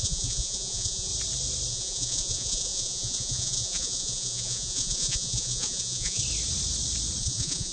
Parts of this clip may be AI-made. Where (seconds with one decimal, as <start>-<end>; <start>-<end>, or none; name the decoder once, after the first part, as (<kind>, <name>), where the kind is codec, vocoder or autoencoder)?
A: 0.0-1.1 (vocoder, Vocos); 1.7-6.2; 7.2-7.7

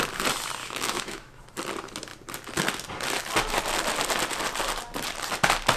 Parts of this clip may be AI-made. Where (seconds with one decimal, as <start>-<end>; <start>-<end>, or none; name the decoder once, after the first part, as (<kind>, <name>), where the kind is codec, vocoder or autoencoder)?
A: 0.6-1.4 (autoencoder, DAC-VAE)

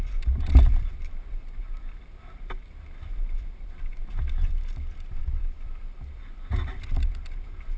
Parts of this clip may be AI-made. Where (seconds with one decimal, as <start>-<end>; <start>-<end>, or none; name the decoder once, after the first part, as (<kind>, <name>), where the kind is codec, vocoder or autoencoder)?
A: 0.0-4.0 (vocoder, BigVGAN v2); 5.2-7.8

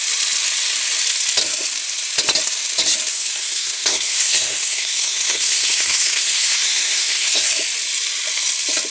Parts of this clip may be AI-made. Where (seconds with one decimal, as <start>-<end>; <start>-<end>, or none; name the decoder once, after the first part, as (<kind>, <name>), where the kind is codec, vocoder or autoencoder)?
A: 3.1-7.5 (codec, SNAC)